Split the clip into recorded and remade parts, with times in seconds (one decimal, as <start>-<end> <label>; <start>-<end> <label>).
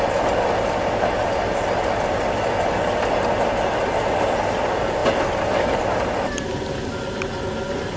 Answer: 0.0-8.0 recorded